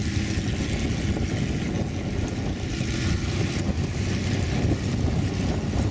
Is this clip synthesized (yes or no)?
no